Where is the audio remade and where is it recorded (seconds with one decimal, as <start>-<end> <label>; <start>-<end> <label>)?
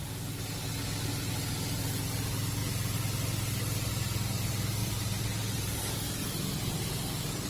0.0-4.8 recorded; 4.8-5.8 remade; 5.8-7.5 recorded